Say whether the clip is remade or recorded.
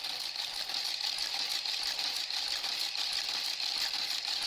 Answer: recorded